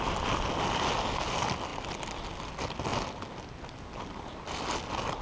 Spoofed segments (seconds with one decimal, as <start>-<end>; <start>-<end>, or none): none